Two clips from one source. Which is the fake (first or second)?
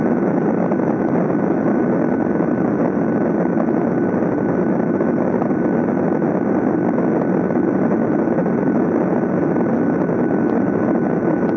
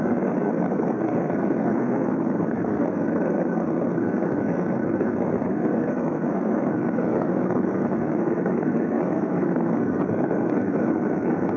second